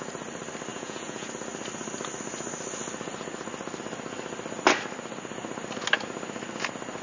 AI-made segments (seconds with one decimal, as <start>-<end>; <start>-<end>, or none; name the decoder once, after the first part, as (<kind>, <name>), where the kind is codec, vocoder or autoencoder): 0.7-1.3 (vocoder, Vocos)